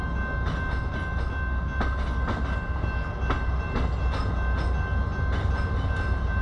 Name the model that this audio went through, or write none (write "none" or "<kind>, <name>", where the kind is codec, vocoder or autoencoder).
none